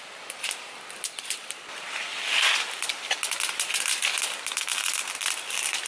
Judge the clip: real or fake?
real